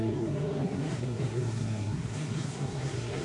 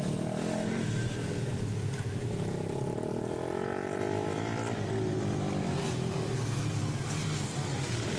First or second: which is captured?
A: second